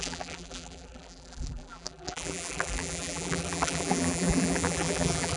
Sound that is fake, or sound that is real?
fake